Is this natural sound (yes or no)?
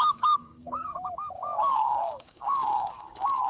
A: no